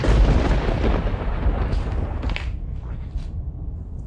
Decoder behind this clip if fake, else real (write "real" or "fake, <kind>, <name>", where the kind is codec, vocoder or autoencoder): fake, vocoder, BigVGAN v2